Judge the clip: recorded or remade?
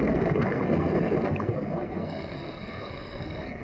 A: remade